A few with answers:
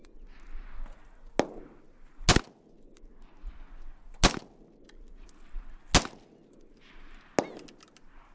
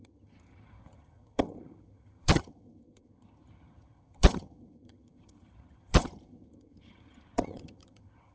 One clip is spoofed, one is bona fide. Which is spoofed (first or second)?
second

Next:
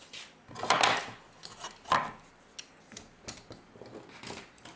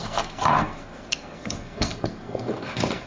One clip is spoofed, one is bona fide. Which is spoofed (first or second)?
second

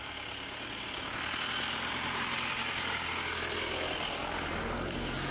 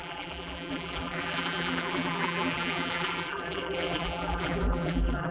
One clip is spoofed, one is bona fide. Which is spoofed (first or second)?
second